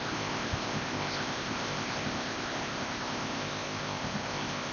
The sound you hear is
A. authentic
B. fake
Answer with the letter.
B